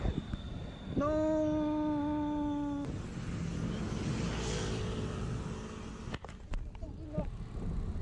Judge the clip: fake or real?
real